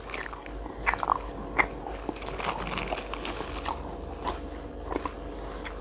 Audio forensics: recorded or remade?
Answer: recorded